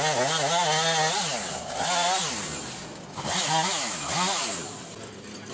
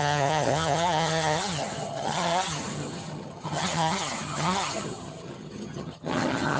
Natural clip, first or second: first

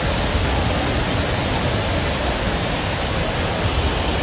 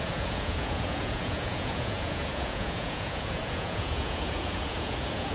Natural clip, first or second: first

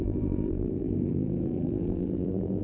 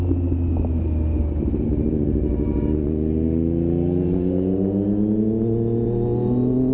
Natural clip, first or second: second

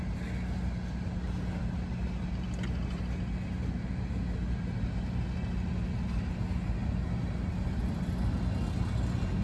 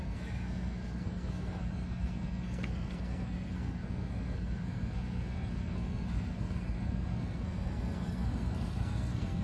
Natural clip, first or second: first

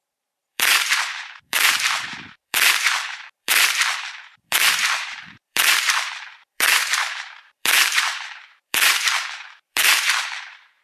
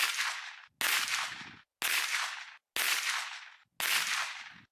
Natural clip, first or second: second